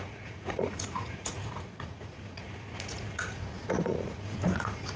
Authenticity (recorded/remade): remade